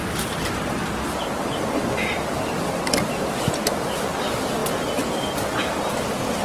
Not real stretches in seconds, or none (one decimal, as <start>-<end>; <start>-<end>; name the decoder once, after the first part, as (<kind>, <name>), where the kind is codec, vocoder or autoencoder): none